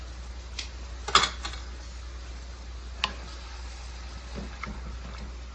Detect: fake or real real